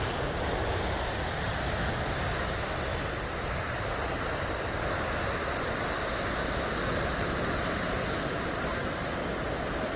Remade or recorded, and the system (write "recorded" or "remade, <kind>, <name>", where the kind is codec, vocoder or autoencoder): recorded